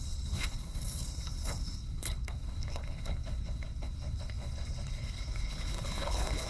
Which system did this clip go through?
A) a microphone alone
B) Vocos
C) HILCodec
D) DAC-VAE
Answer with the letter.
C